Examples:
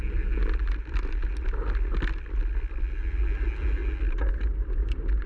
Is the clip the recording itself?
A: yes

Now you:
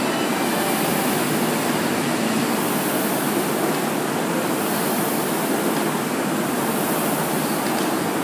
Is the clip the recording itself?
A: yes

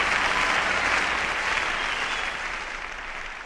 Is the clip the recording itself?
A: yes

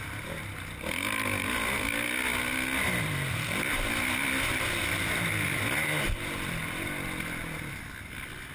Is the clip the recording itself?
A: yes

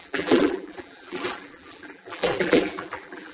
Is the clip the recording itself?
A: no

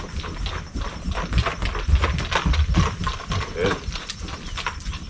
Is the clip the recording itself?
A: yes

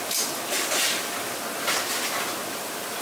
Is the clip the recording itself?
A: yes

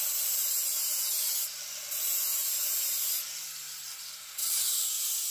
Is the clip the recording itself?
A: no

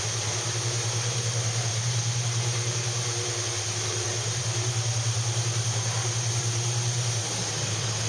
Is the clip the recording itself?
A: no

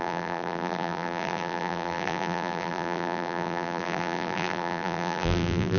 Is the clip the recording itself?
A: no